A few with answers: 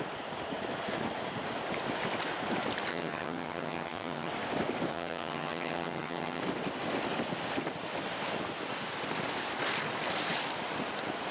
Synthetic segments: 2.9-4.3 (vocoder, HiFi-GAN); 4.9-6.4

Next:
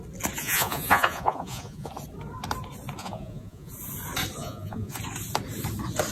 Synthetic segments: 0.4-1.9 (vocoder, Vocos); 3.0-3.7; 4.4-5.0

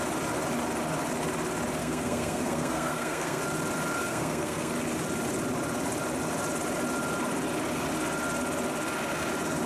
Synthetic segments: 1.8-3.4 (codec, SNAC); 4.1-4.7